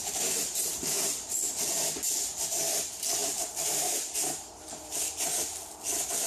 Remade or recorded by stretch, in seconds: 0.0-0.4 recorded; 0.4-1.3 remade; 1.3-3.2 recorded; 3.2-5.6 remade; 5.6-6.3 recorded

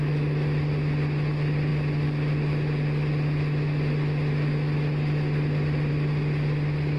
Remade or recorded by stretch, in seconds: 0.0-7.0 recorded

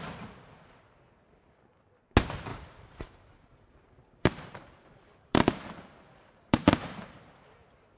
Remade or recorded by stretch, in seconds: 0.0-2.5 recorded; 2.5-7.3 remade; 7.3-8.0 recorded

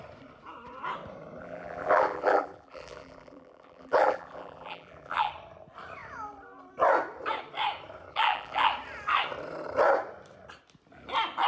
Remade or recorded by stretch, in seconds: 0.0-1.4 recorded; 1.4-5.3 remade; 5.3-8.1 recorded; 8.1-8.7 remade; 8.7-11.5 recorded

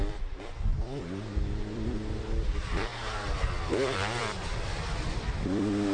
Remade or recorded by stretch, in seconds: 0.0-0.7 remade; 0.7-1.6 recorded; 1.6-2.9 remade; 2.9-4.2 recorded; 4.2-5.9 remade

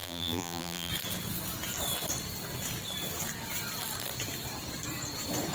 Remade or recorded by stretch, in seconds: 0.0-0.9 remade; 0.9-5.5 recorded